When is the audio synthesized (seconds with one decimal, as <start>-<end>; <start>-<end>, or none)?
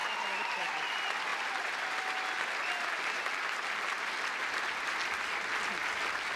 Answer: none